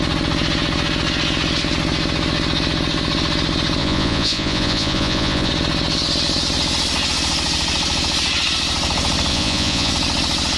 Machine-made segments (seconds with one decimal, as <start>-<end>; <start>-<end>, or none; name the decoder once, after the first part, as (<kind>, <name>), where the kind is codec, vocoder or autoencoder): 3.8-5.5 (vocoder, Vocos); 9.3-9.9